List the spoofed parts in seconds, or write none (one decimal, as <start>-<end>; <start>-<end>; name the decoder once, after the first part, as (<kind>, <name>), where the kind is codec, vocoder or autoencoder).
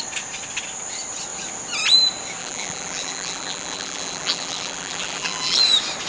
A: 2.4-5.6 (vocoder, BigVGAN v2)